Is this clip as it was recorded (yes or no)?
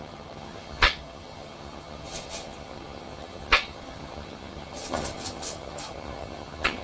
no